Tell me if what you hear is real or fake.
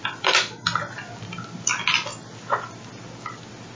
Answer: real